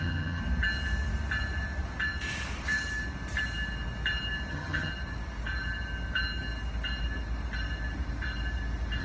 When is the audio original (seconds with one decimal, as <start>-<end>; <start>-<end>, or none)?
0.4-4.5; 4.9-9.0